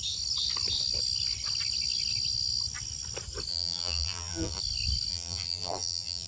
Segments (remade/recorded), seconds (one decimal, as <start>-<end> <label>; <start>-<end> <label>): 0.0-3.5 recorded; 3.5-4.6 remade; 4.6-5.1 recorded; 5.1-6.3 remade